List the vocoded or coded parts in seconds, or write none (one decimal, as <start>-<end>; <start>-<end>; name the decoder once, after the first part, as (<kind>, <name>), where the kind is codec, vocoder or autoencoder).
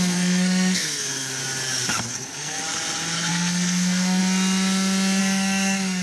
0.0-1.4 (codec, SNAC); 2.0-2.6; 3.3-4.2; 5.2-6.0